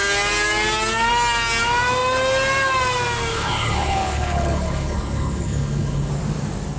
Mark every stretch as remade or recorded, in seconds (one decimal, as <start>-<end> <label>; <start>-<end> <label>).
0.0-3.3 recorded; 3.3-6.1 remade; 6.1-6.8 recorded